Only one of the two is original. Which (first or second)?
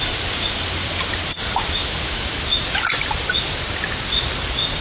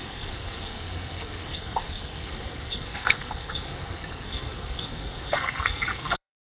first